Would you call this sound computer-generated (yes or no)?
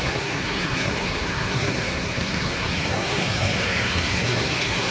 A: yes